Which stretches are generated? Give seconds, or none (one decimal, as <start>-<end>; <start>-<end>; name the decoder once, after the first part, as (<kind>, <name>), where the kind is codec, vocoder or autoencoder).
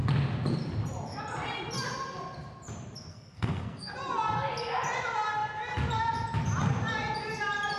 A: 3.1-3.9 (codec, SNAC)